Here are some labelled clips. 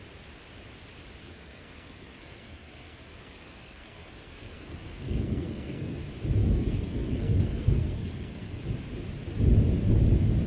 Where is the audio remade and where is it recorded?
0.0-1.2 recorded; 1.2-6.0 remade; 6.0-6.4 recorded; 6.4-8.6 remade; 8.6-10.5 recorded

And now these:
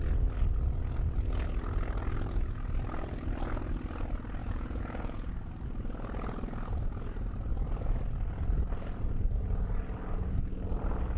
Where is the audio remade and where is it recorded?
0.0-4.4 recorded; 4.4-5.3 remade; 5.3-11.2 recorded

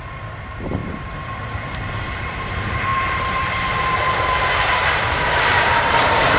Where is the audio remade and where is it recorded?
0.0-6.4 remade

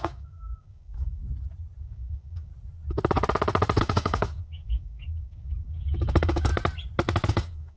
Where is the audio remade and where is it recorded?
0.0-1.2 remade; 1.2-1.8 recorded; 1.8-2.5 remade; 2.5-3.8 recorded; 3.8-6.5 remade; 6.5-7.3 recorded; 7.3-7.8 remade

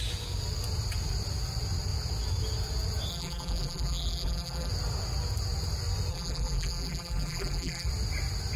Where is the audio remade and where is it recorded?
0.0-3.1 recorded; 3.1-4.7 remade; 4.7-6.1 recorded; 6.1-7.9 remade; 7.9-8.6 recorded

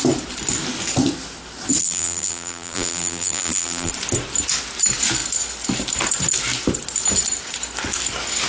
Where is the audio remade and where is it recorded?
0.0-1.8 recorded; 1.8-3.9 remade; 3.9-8.5 recorded